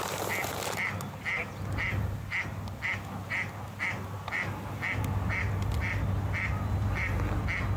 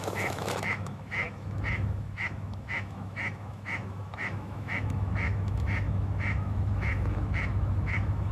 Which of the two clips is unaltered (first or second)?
first